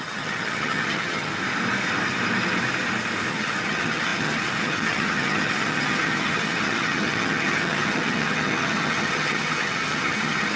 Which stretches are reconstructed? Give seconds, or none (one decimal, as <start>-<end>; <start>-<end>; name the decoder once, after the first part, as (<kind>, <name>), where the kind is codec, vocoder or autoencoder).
0.0-1.3 (vocoder, HiFi-GAN); 3.3-10.6

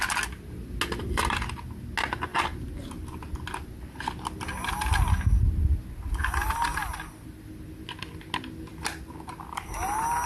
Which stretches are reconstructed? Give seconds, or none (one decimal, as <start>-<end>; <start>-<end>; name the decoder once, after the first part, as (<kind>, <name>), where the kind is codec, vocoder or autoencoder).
none

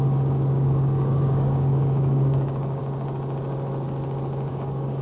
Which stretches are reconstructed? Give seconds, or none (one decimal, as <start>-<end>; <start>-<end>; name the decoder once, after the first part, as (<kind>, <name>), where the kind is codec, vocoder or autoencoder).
0.0-2.8 (codec, DAC); 4.5-5.0